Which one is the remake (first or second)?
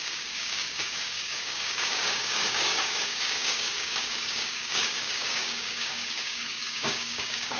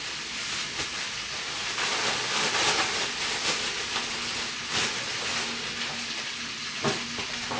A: first